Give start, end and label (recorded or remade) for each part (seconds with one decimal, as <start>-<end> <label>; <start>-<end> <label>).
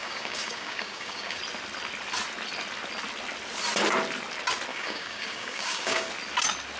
0.0-1.4 remade; 1.4-4.7 recorded; 4.7-6.1 remade; 6.1-6.8 recorded